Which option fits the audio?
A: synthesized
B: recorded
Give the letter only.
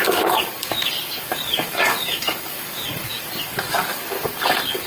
A